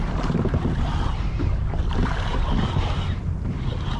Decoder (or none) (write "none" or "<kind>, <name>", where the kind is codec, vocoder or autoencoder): none